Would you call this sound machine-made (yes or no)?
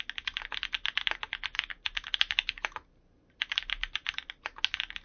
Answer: no